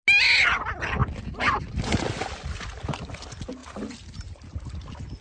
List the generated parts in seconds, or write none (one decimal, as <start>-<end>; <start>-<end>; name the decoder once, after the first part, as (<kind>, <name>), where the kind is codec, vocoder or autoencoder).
none